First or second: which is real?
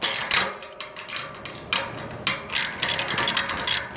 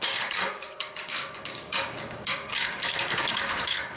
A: first